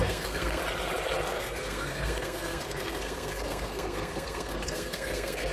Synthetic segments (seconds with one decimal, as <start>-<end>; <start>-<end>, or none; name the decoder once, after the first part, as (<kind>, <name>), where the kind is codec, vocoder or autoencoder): 0.0-0.6 (codec, SNAC); 1.3-5.5